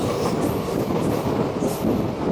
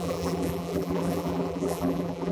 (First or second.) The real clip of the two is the first